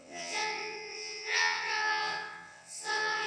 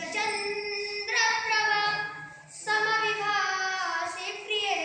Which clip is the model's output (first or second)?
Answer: first